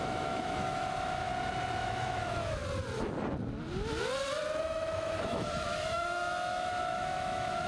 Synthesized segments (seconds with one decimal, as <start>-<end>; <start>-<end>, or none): 0.0-1.3; 1.8-2.6; 4.6-7.7